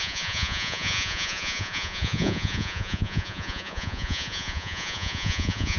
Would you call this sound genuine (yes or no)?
no